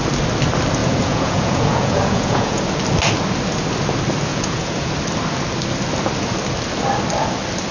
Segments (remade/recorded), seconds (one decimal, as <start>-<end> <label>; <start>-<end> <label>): 0.0-0.8 recorded; 0.8-2.6 remade; 2.6-4.3 recorded; 4.3-4.9 remade; 4.9-7.7 recorded